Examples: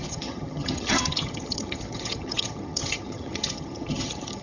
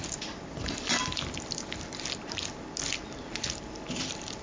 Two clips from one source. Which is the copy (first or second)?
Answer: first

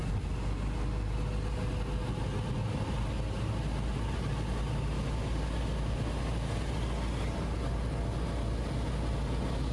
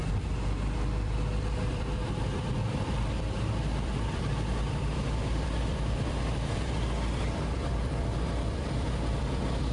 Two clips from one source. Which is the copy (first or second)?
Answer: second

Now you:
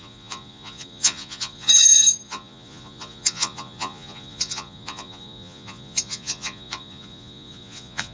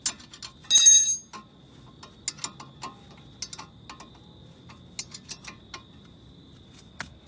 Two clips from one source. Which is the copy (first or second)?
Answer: first